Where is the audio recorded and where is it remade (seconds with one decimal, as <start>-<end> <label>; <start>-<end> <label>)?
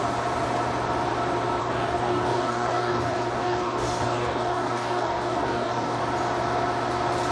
0.0-1.6 recorded; 1.6-6.0 remade; 6.0-7.3 recorded